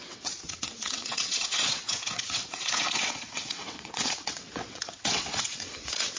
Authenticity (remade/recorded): remade